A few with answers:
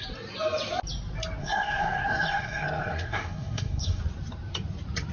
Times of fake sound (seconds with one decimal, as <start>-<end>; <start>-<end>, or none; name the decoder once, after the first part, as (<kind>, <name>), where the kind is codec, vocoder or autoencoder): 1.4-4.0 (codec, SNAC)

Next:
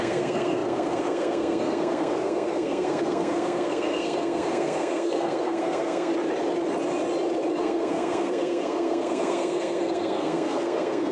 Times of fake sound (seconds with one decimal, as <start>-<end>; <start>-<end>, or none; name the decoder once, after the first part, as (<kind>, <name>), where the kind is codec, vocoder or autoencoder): 0.0-6.1 (codec, SNAC); 7.6-11.1

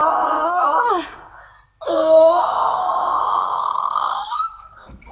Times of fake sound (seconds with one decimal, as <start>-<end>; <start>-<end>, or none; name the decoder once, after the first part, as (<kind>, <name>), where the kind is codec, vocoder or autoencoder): 0.0-0.9 (codec, SNAC); 1.9-5.1

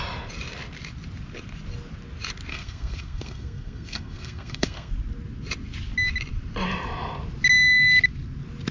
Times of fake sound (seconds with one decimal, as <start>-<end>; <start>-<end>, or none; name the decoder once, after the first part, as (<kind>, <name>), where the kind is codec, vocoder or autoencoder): 2.5-4.9 (codec, SNAC)